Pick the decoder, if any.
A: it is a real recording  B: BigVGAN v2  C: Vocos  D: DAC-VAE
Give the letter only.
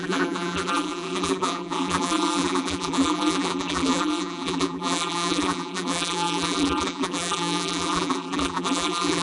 B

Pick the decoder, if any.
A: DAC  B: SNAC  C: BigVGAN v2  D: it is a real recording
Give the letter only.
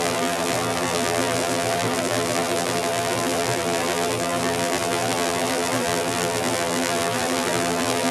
C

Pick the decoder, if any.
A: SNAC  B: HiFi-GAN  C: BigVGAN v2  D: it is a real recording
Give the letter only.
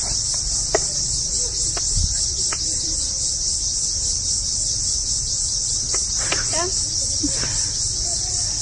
C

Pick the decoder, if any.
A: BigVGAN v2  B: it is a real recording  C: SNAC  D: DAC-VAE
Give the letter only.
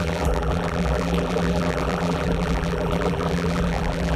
A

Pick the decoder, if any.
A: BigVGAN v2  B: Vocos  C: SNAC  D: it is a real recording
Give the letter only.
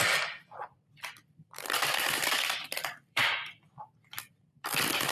A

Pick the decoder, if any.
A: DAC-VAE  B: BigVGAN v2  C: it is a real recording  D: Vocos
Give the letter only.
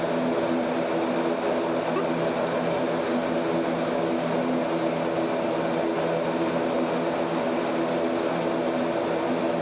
C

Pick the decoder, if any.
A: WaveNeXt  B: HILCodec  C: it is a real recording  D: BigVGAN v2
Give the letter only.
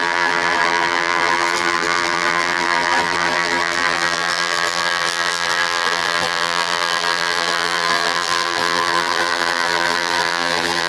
D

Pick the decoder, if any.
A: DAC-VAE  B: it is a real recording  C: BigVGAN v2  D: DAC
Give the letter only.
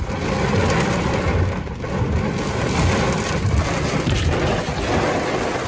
B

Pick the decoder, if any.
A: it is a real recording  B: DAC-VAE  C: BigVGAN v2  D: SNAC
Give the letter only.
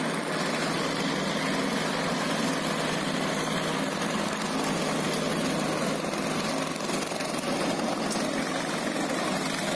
A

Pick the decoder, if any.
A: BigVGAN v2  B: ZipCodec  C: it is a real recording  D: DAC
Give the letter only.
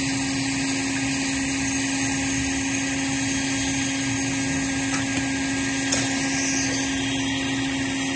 C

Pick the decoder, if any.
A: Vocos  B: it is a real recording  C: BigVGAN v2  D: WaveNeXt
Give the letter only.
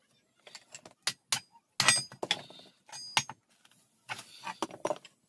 B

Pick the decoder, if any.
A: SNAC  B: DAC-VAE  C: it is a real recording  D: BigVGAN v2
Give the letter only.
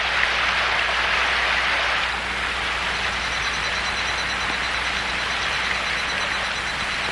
C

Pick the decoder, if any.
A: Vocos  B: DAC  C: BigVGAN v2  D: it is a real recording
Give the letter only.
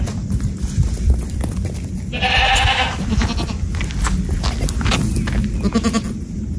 D